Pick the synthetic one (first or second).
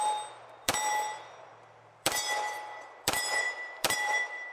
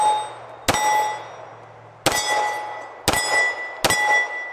first